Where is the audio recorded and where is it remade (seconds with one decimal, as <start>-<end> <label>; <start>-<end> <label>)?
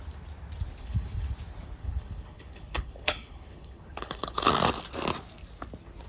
0.0-0.8 recorded; 0.8-1.3 remade; 1.3-1.8 recorded; 1.8-4.5 remade; 4.5-6.1 recorded